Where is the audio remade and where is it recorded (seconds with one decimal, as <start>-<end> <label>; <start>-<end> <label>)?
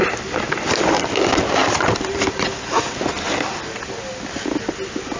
0.0-5.2 recorded